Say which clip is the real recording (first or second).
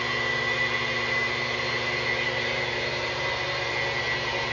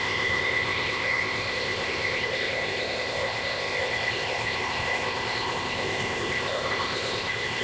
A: first